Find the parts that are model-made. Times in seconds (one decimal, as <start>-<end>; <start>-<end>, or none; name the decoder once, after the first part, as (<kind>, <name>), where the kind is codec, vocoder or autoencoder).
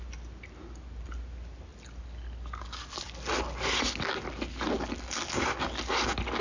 none